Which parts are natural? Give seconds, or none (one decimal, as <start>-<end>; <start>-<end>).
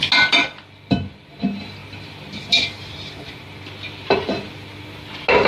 0.0-0.4; 1.3-1.8; 5.1-5.5